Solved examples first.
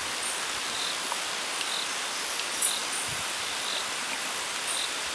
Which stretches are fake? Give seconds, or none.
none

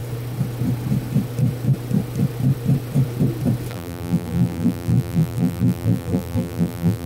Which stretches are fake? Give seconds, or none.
3.7-7.1 (vocoder, BigVGAN v2)